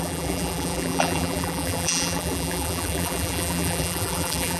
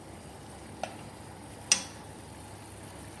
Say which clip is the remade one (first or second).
first